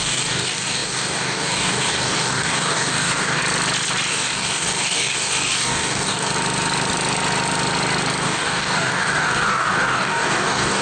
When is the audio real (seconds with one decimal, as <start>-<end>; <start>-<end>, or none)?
3.4-4.1; 6.3-8.2